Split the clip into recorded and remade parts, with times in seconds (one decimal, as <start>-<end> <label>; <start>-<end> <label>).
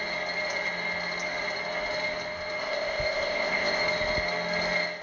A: 0.0-2.6 recorded; 2.6-3.8 remade; 3.8-5.0 recorded